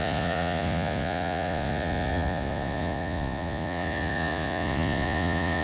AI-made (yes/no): yes